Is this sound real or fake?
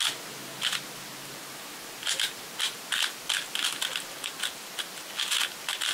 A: real